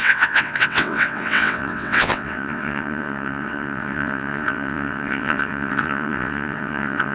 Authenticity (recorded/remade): remade